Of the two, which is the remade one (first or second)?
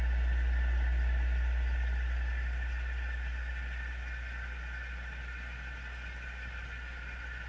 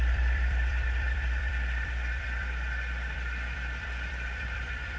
second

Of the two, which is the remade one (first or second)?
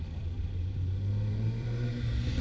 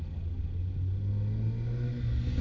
first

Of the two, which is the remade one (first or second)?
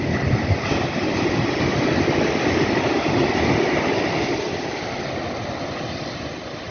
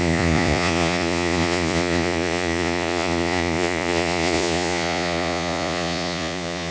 second